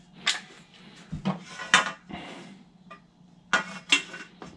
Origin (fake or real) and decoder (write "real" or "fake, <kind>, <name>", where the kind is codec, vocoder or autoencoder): real